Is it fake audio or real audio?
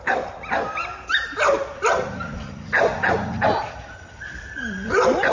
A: fake